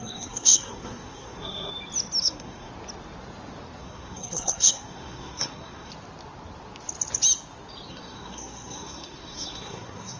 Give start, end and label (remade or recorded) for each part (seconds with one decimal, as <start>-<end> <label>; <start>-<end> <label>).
0.0-1.7 remade; 1.7-2.2 recorded; 2.2-2.7 remade; 2.7-3.8 recorded; 3.8-5.9 remade; 5.9-7.9 recorded; 7.9-10.2 remade